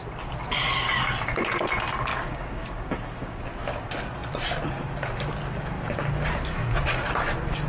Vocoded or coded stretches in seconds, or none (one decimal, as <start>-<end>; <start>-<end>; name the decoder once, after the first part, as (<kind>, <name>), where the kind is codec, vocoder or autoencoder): 2.1-3.4 (codec, DAC)